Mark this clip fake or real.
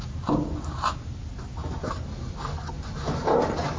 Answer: real